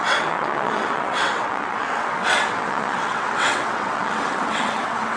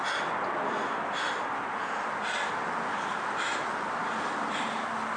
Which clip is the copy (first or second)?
first